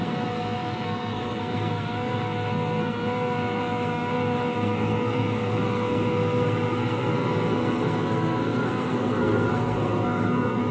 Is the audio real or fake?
fake